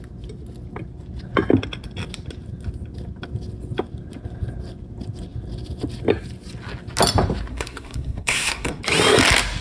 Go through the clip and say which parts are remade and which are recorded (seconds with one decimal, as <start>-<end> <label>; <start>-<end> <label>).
0.0-7.5 recorded; 7.5-8.8 remade; 8.8-9.6 recorded